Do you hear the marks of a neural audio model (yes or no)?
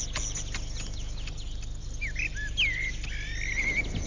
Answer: no